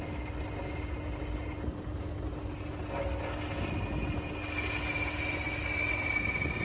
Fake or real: real